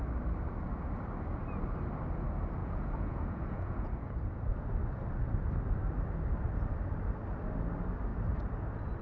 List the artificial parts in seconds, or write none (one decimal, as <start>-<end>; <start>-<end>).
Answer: 2.6-3.9